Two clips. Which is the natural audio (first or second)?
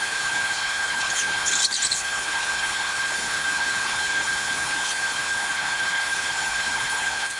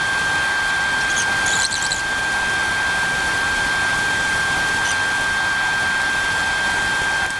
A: second